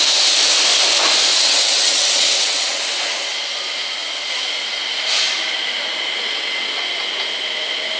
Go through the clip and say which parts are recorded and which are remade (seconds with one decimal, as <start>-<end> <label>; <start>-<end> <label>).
0.0-1.3 recorded; 1.3-2.8 remade; 2.8-6.2 recorded; 6.2-6.7 remade; 6.7-8.0 recorded